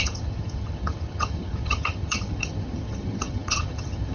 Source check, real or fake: fake